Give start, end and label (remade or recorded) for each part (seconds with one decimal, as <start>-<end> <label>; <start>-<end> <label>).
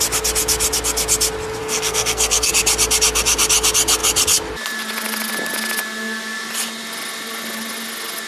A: 0.0-1.6 recorded; 1.6-2.5 remade; 2.5-8.3 recorded